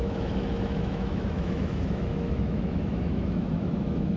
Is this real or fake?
fake